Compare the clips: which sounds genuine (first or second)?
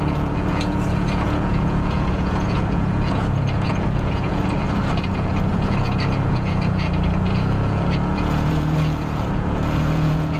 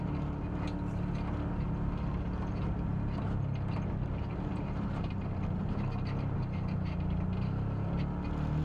second